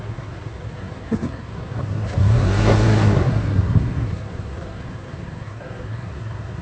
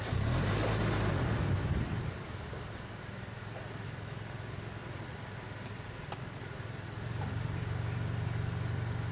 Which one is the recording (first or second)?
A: second